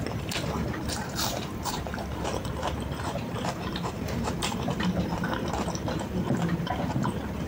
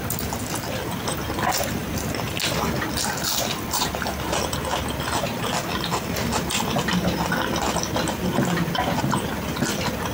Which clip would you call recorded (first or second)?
second